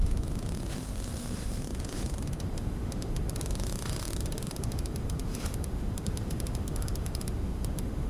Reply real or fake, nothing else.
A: fake